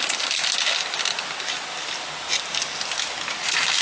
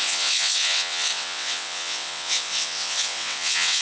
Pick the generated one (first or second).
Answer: second